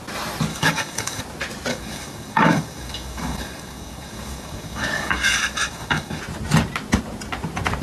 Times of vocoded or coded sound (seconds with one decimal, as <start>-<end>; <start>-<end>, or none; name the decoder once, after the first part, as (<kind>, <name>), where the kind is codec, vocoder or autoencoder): 0.5-1.2 (codec, DAC); 1.7-6.2